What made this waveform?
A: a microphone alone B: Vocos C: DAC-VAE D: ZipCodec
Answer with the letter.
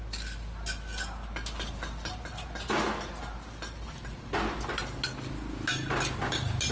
A